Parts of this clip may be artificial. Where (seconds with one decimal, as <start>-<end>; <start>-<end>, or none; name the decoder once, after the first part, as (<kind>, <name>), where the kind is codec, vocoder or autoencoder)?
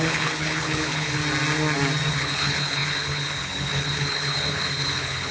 0.0-1.2 (codec, HILCodec); 2.1-5.3